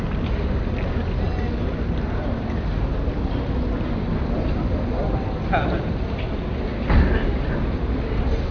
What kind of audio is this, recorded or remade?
recorded